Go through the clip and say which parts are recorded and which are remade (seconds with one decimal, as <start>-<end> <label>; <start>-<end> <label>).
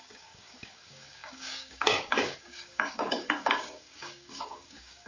0.0-5.1 remade